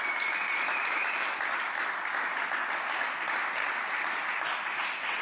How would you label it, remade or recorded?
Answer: recorded